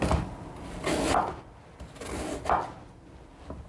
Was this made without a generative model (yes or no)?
yes